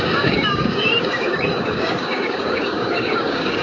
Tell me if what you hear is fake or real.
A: fake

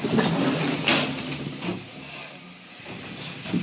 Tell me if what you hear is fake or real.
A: real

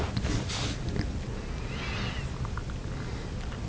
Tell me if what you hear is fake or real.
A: real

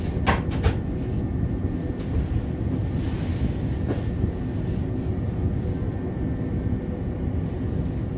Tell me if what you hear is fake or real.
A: real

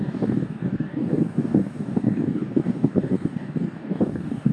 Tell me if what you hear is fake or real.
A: fake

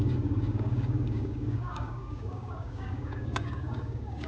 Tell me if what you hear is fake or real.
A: fake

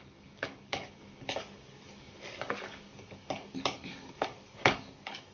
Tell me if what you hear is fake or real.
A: fake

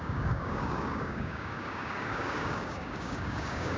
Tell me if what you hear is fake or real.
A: fake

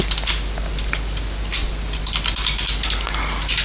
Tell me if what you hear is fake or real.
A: real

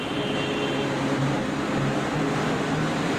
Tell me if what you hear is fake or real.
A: real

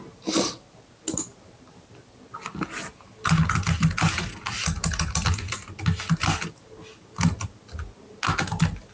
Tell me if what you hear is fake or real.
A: real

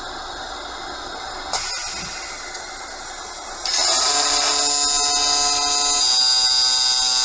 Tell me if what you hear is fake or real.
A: real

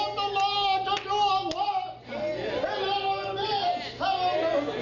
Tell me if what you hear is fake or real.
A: real